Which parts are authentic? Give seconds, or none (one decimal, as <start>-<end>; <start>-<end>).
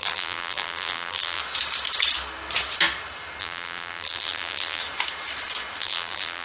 1.4-3.4; 4.8-5.8